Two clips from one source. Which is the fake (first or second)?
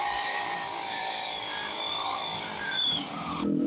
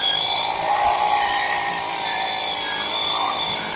first